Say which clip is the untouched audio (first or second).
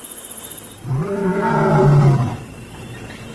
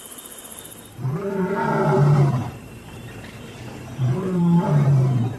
first